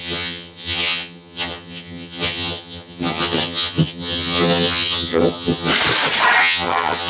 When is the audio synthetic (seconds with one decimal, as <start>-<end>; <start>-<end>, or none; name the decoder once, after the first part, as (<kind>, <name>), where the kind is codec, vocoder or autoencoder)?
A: 0.0-5.7 (vocoder, HiFi-GAN); 6.4-7.1